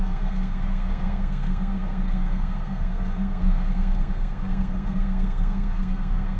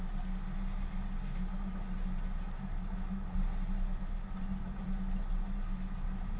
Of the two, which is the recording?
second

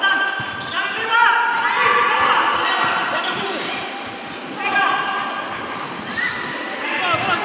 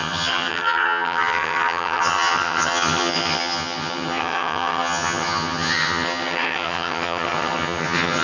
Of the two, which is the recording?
first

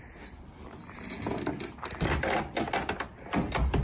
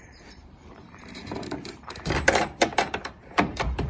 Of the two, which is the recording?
first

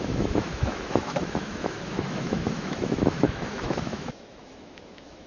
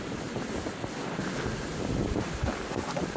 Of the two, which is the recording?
second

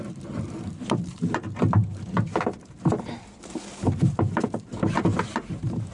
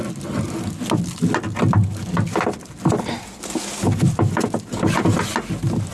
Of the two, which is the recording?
second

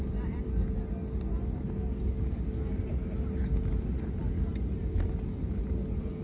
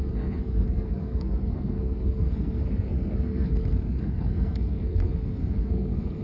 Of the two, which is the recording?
first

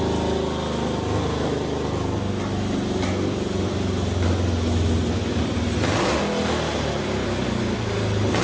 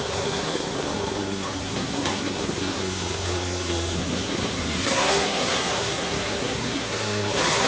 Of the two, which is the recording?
first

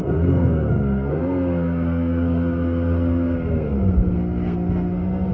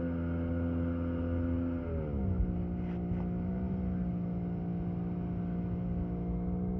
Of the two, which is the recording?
second